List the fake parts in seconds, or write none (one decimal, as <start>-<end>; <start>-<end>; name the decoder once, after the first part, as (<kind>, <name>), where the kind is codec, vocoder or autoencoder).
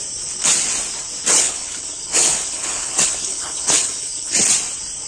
1.3-4.3 (codec, HILCodec)